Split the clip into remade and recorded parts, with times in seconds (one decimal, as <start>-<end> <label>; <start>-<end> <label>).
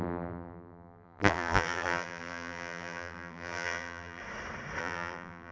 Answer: 0.0-4.2 remade; 4.2-4.8 recorded; 4.8-5.5 remade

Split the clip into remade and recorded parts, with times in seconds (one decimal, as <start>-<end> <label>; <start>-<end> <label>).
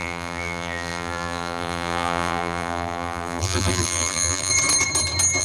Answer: 0.0-4.5 remade; 4.5-5.4 recorded